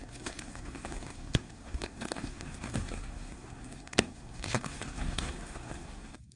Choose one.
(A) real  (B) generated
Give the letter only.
B